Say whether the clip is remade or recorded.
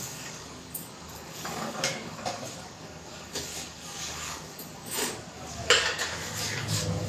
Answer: remade